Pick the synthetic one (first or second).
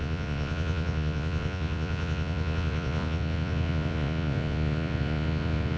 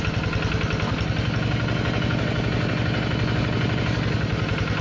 first